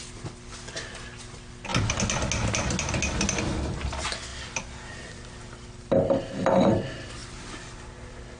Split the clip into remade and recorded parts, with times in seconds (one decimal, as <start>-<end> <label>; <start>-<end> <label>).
0.0-8.4 recorded